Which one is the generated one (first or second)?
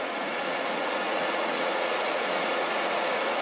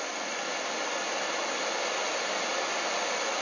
first